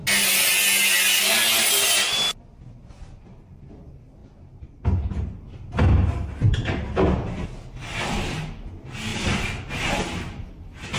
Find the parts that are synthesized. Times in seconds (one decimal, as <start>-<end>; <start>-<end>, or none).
9.1-9.7